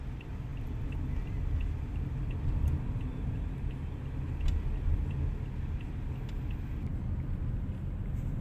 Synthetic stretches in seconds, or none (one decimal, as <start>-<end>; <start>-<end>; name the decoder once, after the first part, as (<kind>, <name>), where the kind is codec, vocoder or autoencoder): none